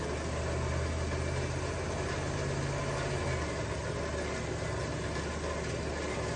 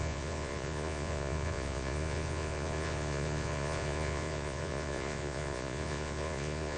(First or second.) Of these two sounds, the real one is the first